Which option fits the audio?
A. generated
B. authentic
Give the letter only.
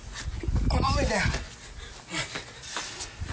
B